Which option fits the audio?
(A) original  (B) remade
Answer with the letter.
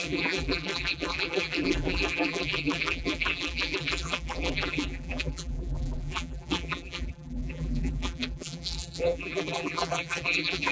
B